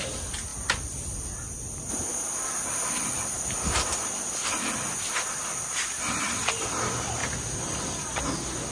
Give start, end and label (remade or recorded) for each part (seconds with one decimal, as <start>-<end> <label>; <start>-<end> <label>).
0.0-7.2 recorded; 7.2-8.2 remade; 8.2-8.7 recorded